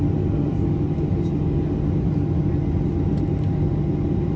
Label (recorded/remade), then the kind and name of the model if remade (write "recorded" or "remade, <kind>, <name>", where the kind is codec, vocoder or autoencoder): recorded